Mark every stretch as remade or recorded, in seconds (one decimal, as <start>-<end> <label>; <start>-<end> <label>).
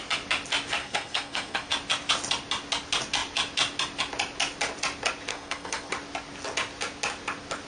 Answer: 0.0-0.8 recorded; 0.8-1.7 remade; 1.7-5.3 recorded; 5.3-5.9 remade; 5.9-7.7 recorded